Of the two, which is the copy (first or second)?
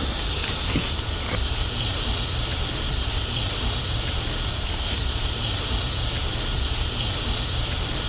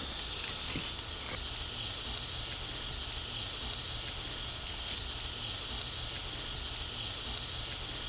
first